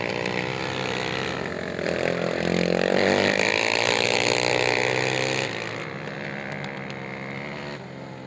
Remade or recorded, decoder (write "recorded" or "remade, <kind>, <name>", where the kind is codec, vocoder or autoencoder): recorded